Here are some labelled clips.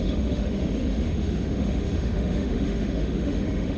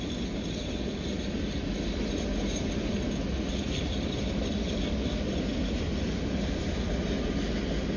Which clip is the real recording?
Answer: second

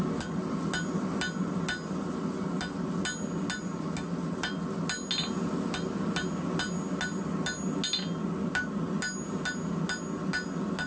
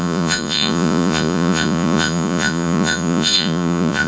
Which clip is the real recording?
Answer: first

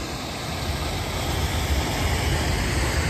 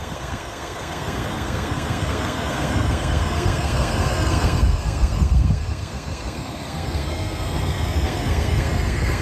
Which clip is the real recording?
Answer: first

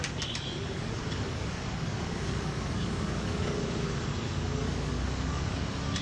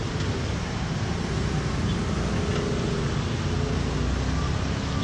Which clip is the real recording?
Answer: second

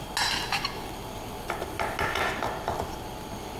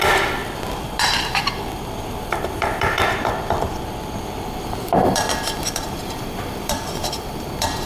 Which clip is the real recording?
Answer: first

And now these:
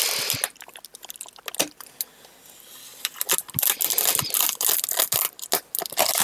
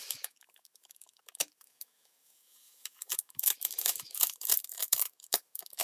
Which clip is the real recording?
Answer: first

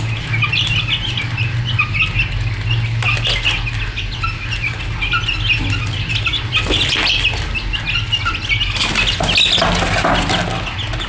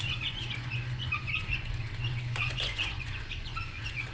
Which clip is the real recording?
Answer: first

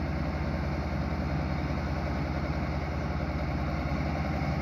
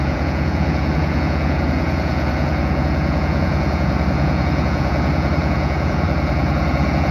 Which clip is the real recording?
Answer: first